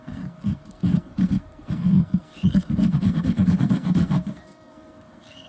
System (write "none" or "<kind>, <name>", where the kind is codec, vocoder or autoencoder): codec, SNAC